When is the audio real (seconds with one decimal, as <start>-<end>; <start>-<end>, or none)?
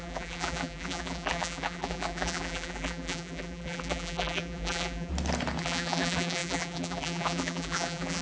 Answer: 5.1-5.6